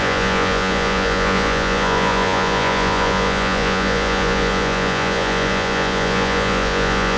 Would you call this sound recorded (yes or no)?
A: no